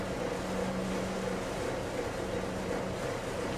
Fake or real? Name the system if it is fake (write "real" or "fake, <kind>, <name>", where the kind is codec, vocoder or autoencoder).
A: real